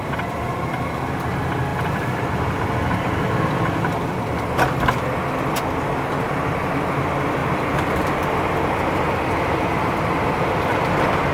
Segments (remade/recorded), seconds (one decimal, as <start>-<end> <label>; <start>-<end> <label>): 0.0-1.7 recorded; 1.7-5.6 remade; 5.6-7.4 recorded; 7.4-8.2 remade; 8.2-11.3 recorded